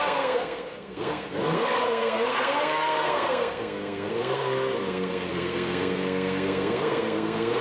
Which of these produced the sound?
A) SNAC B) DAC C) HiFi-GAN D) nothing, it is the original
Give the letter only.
A